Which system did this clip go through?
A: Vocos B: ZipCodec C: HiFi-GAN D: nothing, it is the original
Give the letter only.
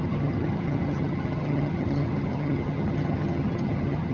C